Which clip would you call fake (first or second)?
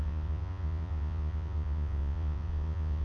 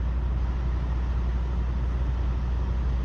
first